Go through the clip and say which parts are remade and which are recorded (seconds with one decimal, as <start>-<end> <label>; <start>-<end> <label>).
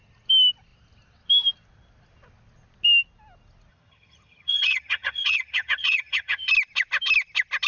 0.0-3.7 recorded; 3.7-6.5 remade; 6.5-7.7 recorded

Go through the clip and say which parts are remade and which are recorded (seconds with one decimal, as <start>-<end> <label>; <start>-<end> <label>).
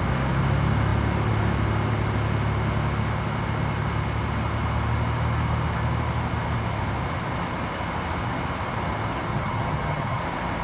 0.0-9.3 recorded; 9.3-10.2 remade; 10.2-10.6 recorded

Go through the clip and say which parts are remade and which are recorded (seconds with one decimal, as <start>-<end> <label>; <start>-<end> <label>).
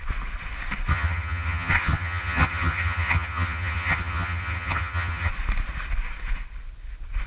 0.0-0.9 recorded; 0.9-5.3 remade; 5.3-7.3 recorded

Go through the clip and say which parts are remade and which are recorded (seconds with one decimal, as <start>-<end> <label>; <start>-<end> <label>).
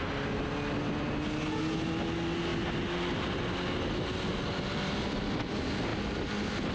0.0-6.7 recorded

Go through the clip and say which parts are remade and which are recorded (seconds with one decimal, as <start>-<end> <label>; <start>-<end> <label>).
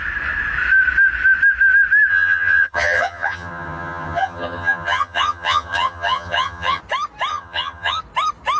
0.0-2.1 recorded; 2.1-6.8 remade; 6.8-7.3 recorded; 7.3-8.0 remade; 8.0-8.6 recorded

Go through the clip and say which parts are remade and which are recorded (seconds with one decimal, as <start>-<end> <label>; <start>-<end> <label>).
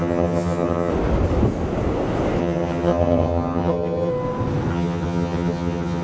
0.0-0.9 remade; 0.9-2.4 recorded; 2.4-4.1 remade; 4.1-4.7 recorded; 4.7-6.0 remade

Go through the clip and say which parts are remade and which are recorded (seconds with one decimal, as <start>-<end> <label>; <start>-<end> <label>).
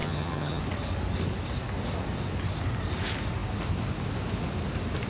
0.0-0.6 remade; 0.6-5.1 recorded